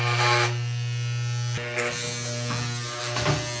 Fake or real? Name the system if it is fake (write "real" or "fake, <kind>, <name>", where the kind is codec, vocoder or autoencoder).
real